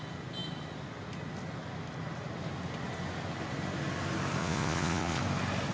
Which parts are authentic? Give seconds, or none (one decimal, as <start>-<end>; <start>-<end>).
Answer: 0.0-4.4; 5.2-5.7